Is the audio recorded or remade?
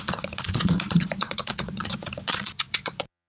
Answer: remade